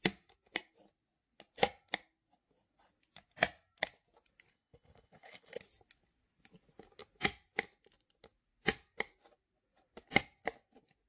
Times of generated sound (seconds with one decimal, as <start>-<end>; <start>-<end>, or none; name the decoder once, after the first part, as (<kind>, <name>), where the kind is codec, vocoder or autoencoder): 4.5-5.6 (codec, HILCodec)